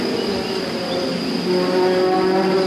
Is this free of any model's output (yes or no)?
yes